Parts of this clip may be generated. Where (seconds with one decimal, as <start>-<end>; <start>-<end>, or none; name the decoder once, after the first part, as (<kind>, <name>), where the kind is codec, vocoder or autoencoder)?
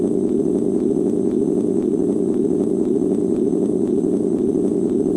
1.9-5.2 (vocoder, BigVGAN v2)